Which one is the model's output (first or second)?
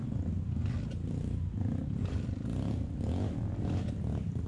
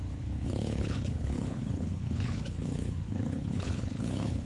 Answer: second